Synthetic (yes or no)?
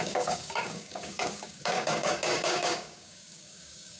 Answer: yes